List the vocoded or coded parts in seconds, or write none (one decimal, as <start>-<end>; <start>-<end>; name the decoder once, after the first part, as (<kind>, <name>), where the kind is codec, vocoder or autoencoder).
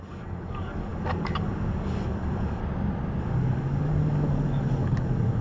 0.0-2.6 (codec, DAC); 3.2-5.4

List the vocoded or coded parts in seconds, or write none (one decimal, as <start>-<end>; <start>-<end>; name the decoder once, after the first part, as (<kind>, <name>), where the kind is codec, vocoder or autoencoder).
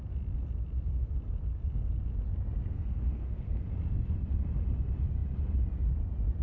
2.7-3.6 (codec, SNAC)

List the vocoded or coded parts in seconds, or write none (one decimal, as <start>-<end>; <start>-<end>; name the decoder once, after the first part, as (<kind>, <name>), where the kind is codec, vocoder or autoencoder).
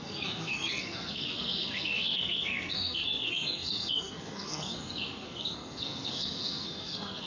0.0-7.3 (codec, SNAC)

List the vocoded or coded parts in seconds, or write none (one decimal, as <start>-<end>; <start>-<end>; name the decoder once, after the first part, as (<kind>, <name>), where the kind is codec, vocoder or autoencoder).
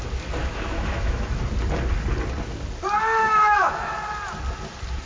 0.4-1.4 (autoencoder, DAC-VAE); 3.2-3.9